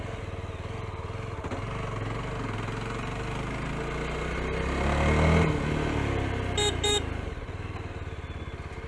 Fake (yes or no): no